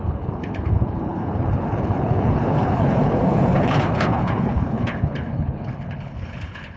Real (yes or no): no